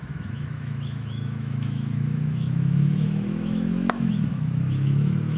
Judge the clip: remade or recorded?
remade